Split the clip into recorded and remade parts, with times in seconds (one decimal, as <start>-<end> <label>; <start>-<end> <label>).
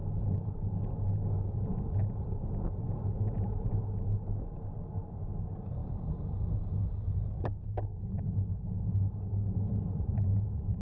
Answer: 0.0-10.8 recorded